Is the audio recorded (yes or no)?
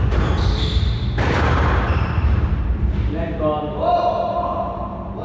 no